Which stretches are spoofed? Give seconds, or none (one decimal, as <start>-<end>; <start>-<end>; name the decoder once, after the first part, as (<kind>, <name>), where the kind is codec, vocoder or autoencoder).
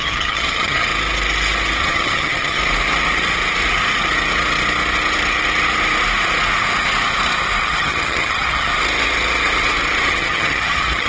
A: 0.0-0.9 (vocoder, HiFi-GAN); 1.8-2.6; 7.6-8.7; 10.1-11.1